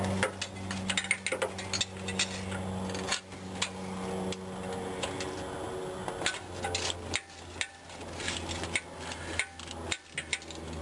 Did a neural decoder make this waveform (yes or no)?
no